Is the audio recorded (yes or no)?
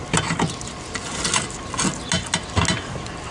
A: yes